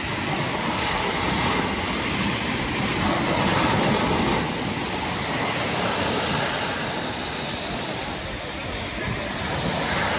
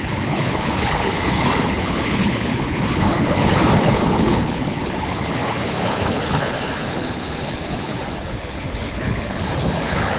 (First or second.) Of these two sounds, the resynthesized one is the second